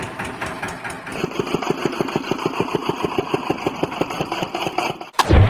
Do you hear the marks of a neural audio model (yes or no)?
no